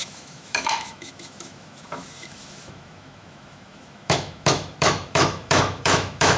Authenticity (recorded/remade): remade